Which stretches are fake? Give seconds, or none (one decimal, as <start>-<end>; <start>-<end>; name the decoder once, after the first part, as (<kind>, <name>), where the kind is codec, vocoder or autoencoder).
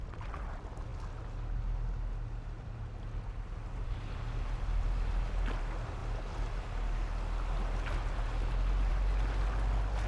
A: none